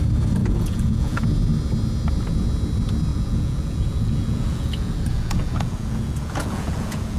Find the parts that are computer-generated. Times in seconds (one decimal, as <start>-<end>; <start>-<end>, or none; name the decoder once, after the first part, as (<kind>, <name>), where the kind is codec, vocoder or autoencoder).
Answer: 0.4-1.2 (vocoder, Vocos); 3.1-7.2